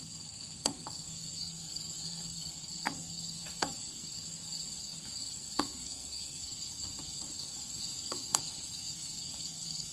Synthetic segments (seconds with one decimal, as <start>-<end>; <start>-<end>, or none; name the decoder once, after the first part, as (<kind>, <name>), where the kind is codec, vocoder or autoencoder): 0.0-9.9 (codec, SNAC)